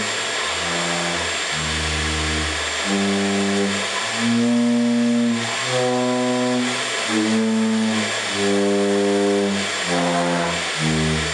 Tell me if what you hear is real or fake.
real